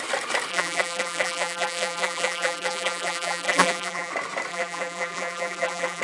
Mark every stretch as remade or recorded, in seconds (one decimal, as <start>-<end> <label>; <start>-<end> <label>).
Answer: 0.0-0.5 recorded; 0.5-4.1 remade; 4.1-4.5 recorded; 4.5-6.0 remade